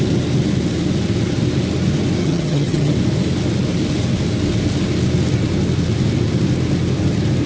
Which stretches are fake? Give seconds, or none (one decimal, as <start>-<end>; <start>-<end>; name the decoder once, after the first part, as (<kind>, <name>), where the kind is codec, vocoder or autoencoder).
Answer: 2.2-2.9 (vocoder, HiFi-GAN)